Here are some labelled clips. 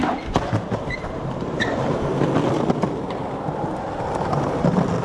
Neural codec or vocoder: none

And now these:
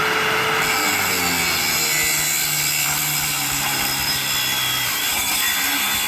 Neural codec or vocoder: none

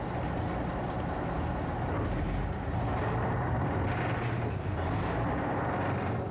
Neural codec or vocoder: none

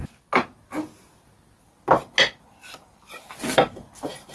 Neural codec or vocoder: none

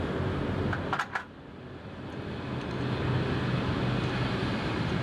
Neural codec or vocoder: none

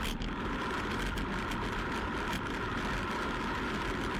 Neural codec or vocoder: vocoder, BigVGAN v2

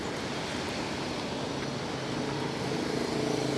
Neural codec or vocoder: none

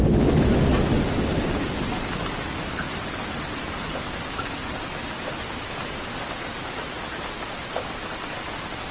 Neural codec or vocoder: none